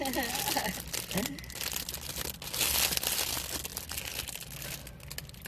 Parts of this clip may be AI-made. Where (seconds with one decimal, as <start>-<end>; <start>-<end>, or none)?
none